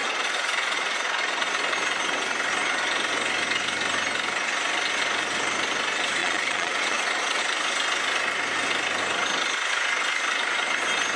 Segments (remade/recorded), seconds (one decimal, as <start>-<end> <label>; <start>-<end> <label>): 0.0-1.5 remade; 1.5-6.2 recorded; 6.2-7.4 remade; 7.4-11.2 recorded